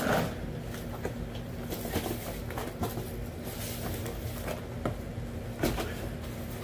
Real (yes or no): yes